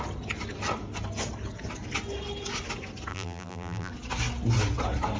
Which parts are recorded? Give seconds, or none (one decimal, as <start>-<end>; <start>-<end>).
0.0-3.1; 3.9-5.2